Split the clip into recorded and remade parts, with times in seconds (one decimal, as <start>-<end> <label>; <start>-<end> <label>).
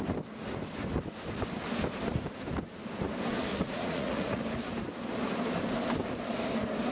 0.0-3.5 recorded; 3.5-4.4 remade; 4.4-6.9 recorded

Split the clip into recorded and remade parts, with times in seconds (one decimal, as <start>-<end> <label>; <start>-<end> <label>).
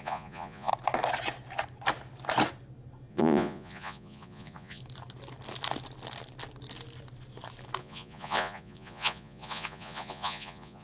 0.0-0.7 remade; 0.7-3.1 recorded; 3.1-4.8 remade; 4.8-7.8 recorded; 7.8-10.8 remade